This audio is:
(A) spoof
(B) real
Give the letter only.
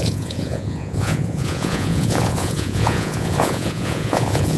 A